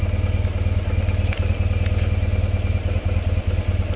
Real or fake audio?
real